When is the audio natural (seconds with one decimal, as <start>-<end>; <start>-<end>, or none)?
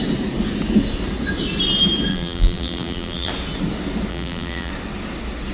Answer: 0.0-2.1; 3.3-4.1; 4.7-5.5